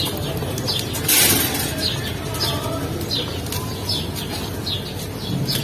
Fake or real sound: real